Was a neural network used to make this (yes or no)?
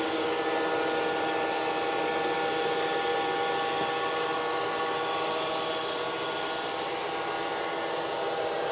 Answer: no